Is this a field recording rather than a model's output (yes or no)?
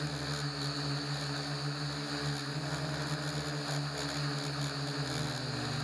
yes